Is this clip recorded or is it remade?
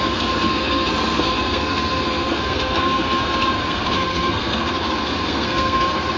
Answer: remade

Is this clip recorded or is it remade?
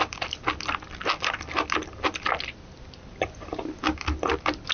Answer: recorded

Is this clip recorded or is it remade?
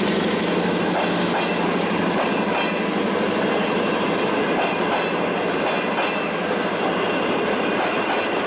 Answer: recorded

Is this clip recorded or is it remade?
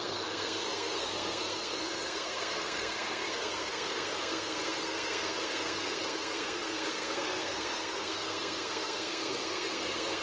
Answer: remade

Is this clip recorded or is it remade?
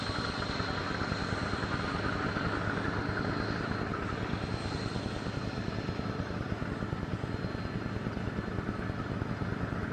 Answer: recorded